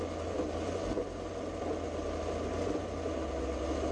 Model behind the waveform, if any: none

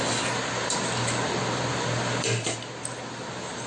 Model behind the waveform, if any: none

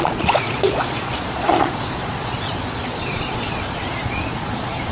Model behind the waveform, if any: vocoder, Vocos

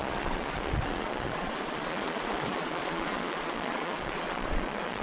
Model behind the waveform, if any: vocoder, Vocos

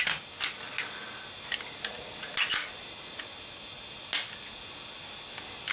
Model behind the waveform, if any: none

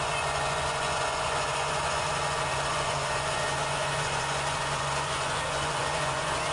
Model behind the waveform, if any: vocoder, Vocos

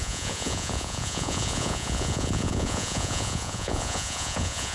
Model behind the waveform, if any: vocoder, Vocos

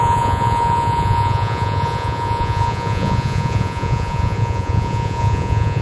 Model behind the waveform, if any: vocoder, Vocos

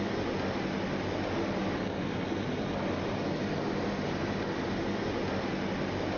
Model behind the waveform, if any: none